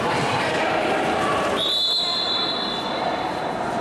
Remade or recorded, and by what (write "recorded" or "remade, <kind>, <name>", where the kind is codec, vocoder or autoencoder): recorded